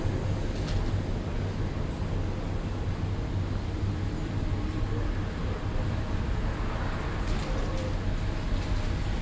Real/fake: real